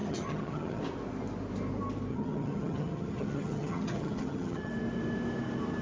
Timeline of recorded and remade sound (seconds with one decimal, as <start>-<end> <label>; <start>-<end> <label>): 0.0-0.8 remade; 0.8-2.1 recorded; 2.1-4.7 remade; 4.7-5.8 recorded